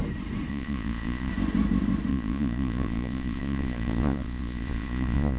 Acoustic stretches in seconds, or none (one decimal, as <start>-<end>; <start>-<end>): 0.0-0.5; 1.3-2.1

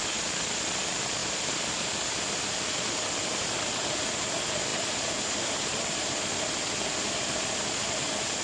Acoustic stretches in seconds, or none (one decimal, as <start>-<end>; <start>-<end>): 0.0-8.4